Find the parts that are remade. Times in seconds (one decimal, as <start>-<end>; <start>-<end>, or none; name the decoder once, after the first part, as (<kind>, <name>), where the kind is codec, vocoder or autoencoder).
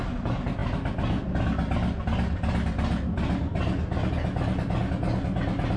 none